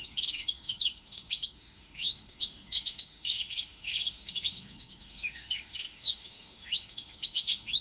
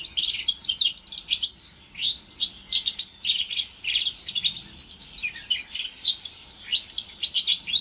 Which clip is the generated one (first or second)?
first